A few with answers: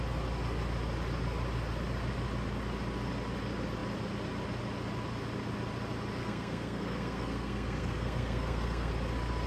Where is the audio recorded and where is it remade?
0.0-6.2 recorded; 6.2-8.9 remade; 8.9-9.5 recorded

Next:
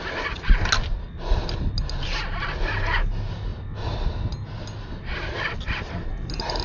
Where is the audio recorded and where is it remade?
0.0-6.6 recorded